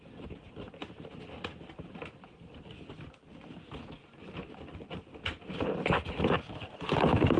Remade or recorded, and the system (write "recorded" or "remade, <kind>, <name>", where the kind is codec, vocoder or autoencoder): recorded